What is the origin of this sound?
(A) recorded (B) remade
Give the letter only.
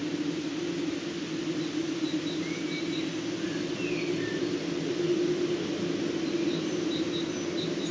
A